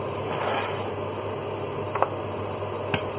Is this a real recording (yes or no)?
yes